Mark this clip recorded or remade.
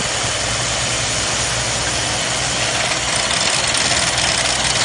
recorded